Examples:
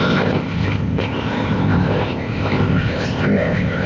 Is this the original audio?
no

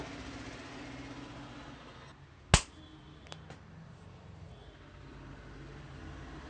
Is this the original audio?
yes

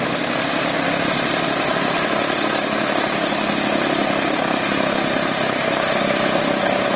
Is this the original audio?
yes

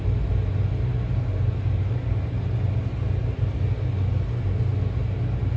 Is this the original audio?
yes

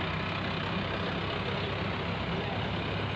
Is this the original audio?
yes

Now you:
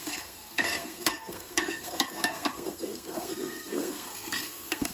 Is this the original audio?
no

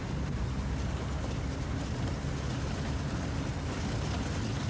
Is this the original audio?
yes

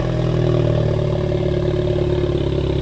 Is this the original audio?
yes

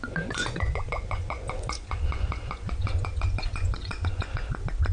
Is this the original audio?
no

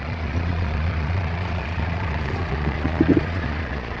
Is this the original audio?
no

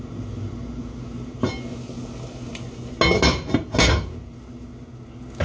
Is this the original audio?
yes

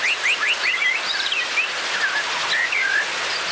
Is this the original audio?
yes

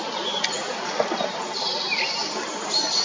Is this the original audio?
yes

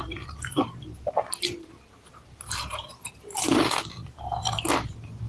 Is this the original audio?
no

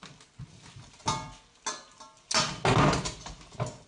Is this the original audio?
yes